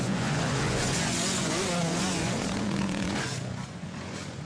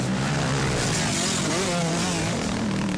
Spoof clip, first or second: first